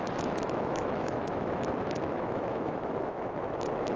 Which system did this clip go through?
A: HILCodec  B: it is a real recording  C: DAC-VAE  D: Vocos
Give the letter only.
C